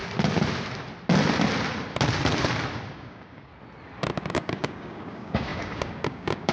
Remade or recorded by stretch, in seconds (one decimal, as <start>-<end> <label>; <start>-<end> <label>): 0.0-2.9 recorded; 2.9-3.5 remade; 3.5-4.3 recorded; 4.3-6.5 remade